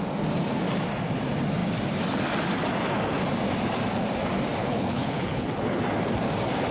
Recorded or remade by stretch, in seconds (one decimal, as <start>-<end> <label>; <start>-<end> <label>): 0.0-4.6 recorded; 4.6-5.8 remade; 5.8-6.7 recorded